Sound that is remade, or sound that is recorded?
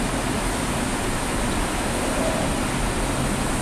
recorded